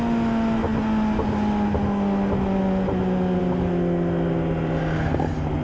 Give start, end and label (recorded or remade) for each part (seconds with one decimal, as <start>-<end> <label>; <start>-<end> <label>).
0.0-5.6 recorded